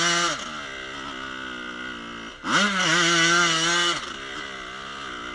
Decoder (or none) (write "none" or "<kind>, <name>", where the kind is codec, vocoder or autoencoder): none